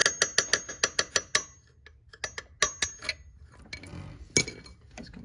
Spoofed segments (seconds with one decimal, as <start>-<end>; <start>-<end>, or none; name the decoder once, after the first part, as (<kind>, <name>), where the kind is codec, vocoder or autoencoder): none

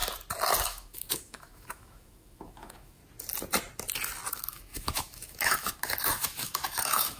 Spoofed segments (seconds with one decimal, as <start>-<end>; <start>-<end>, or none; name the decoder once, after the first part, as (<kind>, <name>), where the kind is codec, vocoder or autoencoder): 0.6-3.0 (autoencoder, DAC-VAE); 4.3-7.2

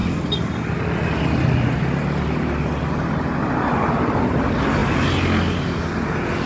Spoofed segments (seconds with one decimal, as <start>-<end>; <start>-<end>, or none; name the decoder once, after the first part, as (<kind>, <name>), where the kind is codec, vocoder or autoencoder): 0.0-1.2 (vocoder, BigVGAN v2)

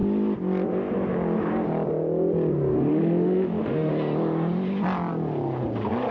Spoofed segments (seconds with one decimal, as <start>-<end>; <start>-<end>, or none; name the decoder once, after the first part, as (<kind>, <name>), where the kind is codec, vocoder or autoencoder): 2.9-3.9 (autoencoder, DAC-VAE)

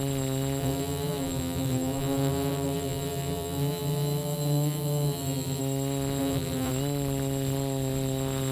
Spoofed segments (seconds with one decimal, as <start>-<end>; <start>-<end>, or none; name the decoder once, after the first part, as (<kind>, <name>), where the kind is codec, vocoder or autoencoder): 0.6-5.6 (vocoder, BigVGAN v2); 6.2-6.7

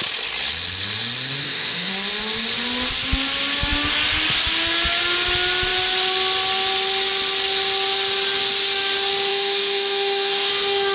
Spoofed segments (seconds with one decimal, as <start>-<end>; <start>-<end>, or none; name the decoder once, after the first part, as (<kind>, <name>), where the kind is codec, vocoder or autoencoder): 1.4-1.9 (autoencoder, DAC-VAE); 9.3-10.5

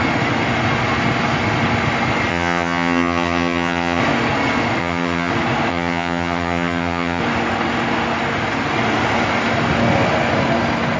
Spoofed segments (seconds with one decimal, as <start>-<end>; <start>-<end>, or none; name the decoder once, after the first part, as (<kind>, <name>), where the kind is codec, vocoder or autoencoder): 2.3-4.0 (vocoder, HiFi-GAN); 4.8-5.3; 5.7-7.2

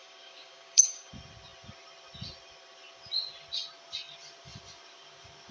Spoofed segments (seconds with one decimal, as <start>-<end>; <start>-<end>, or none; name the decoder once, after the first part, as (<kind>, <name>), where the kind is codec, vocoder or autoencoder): 0.0-1.1 (codec, DAC)